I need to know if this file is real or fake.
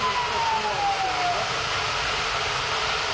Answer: real